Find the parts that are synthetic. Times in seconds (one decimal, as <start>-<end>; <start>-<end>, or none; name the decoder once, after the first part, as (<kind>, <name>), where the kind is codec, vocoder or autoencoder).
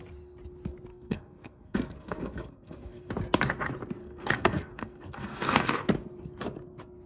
0.9-3.1 (codec, SNAC); 4.0-5.7